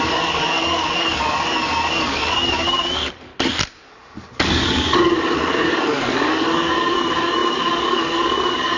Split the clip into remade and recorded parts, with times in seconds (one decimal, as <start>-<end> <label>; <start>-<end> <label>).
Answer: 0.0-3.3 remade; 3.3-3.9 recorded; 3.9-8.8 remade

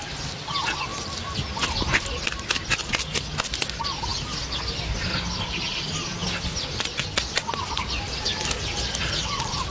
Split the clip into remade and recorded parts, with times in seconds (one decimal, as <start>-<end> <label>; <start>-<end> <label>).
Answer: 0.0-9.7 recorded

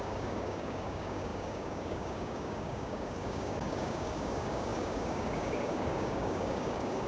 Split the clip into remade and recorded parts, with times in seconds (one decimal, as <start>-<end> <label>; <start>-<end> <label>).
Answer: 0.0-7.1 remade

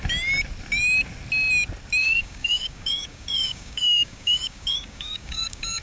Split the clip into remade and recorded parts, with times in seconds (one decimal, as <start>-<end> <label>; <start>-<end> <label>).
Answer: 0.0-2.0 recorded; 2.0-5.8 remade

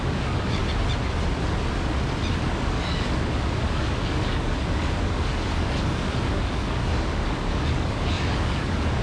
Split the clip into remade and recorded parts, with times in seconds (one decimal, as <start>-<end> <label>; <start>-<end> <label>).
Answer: 0.0-0.6 remade; 0.6-2.4 recorded; 2.4-9.0 remade